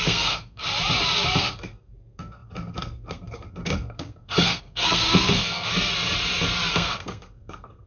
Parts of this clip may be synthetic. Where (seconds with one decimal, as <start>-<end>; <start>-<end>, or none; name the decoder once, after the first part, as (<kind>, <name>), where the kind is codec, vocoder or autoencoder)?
0.0-0.6 (codec, SNAC); 1.4-5.7; 6.7-7.9